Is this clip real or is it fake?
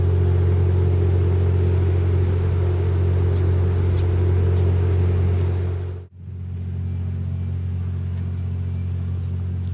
real